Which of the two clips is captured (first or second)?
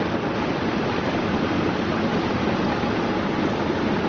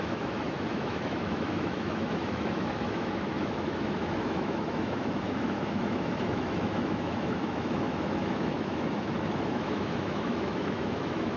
first